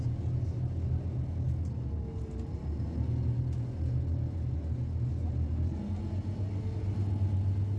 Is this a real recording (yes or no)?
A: yes